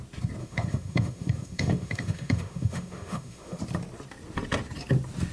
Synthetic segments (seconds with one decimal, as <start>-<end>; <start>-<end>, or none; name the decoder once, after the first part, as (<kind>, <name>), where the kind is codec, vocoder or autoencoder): 0.4-3.6 (autoencoder, DAC-VAE)